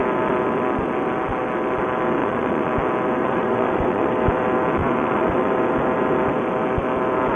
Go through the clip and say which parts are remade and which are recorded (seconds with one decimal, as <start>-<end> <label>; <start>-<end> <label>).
0.0-2.2 recorded; 2.2-2.7 remade; 2.7-3.2 recorded; 3.2-4.1 remade; 4.1-4.8 recorded; 4.8-5.5 remade; 5.5-7.4 recorded